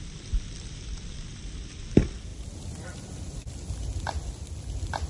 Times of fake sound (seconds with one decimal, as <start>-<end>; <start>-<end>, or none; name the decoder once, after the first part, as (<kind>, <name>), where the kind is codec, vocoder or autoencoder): none